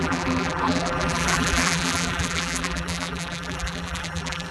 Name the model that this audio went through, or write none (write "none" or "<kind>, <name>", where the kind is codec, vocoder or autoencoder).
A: vocoder, BigVGAN v2